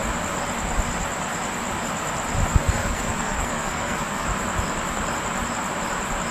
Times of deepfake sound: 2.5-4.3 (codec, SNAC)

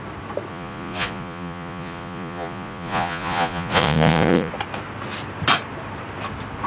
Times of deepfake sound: 0.5-4.5 (vocoder, Vocos)

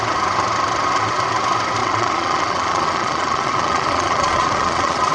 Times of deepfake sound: 1.8-5.1 (vocoder, Vocos)

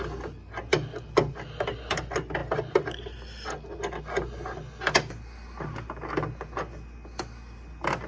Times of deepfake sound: none

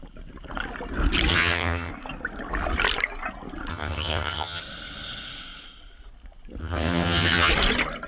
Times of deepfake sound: 1.3-1.9 (vocoder, HiFi-GAN); 3.7-4.6; 6.6-7.5